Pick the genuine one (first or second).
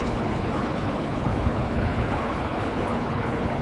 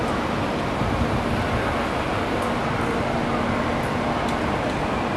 second